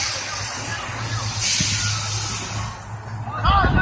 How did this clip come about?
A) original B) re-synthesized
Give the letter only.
A